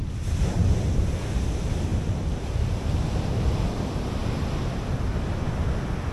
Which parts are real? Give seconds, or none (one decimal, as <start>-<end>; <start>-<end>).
0.0-6.1